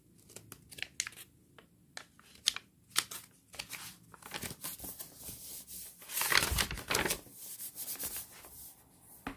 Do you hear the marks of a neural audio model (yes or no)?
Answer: no